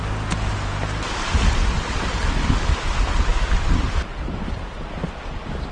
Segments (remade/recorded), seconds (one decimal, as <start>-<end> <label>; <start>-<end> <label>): 0.0-5.7 recorded